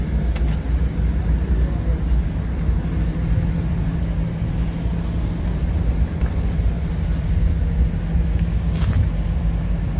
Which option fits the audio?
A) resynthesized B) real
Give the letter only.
B